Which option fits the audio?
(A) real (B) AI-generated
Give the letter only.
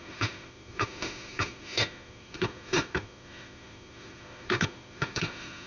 B